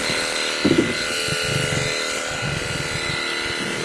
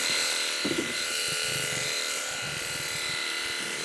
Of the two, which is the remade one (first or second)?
second